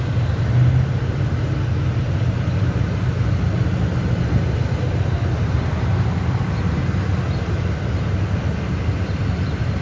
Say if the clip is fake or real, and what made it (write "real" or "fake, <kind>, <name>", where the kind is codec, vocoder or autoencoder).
real